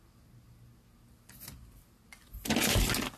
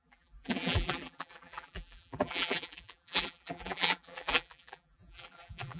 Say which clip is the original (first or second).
first